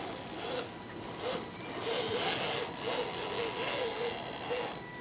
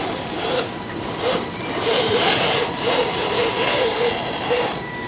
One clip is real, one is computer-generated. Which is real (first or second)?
first